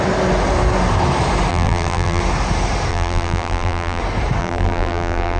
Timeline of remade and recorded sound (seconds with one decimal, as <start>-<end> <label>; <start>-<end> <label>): 0.0-1.5 recorded; 1.5-2.2 remade; 2.2-2.9 recorded; 2.9-4.0 remade; 4.0-4.4 recorded; 4.4-5.4 remade